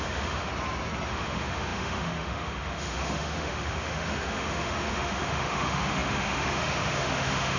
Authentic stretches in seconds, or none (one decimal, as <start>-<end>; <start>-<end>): 0.5-1.1